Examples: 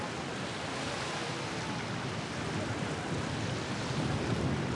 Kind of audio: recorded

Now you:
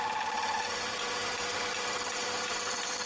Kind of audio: remade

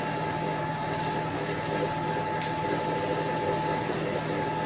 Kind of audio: recorded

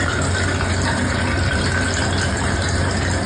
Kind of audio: recorded